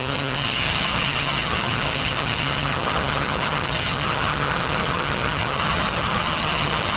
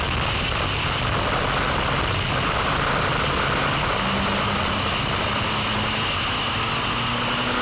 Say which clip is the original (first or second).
second